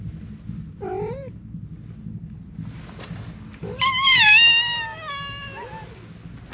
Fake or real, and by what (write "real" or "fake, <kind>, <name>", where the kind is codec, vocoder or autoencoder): real